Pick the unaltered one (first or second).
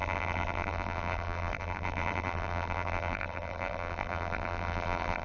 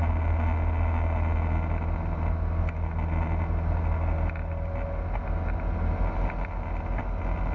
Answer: second